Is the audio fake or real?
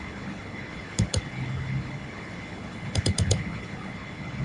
fake